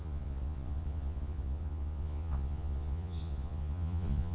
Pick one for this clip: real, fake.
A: fake